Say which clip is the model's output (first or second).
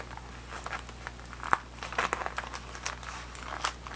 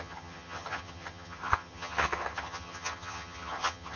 second